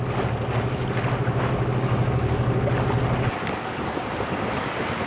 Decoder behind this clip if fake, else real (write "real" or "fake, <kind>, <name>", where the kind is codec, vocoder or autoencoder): real